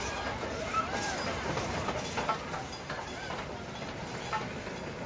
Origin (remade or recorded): recorded